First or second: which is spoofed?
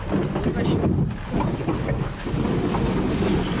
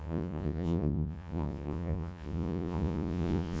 second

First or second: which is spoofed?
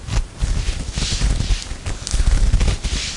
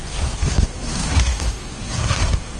second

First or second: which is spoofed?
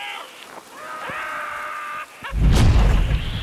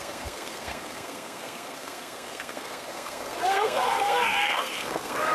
second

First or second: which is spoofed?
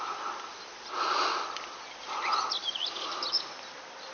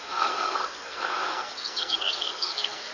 second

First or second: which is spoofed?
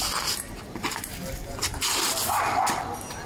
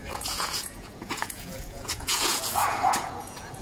second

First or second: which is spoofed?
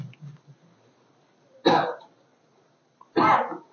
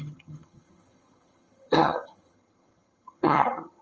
second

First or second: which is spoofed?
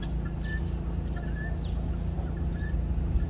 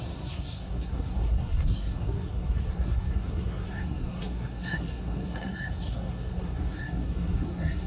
second